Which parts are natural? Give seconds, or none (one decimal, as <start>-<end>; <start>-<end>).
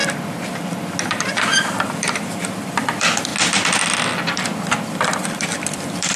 0.0-1.2; 3.3-3.8